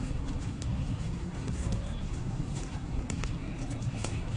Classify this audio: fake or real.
fake